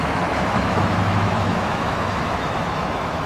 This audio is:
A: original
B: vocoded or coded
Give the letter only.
B